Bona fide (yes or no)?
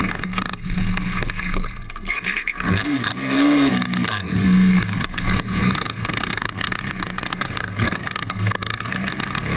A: no